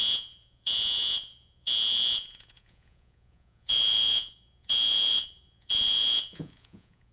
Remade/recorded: remade